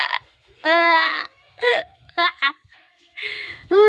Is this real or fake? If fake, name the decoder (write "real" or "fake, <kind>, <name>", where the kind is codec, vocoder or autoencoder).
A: fake, codec, SNAC